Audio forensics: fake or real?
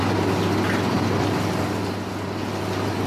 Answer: real